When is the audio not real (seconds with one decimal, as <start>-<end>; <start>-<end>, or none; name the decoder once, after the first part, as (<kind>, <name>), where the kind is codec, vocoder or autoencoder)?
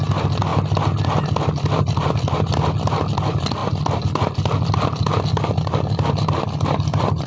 none